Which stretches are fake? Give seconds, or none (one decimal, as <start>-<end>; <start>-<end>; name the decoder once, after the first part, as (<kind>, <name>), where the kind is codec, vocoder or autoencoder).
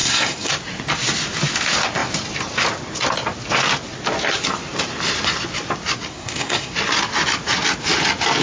0.0-0.5 (codec, SNAC); 6.1-6.7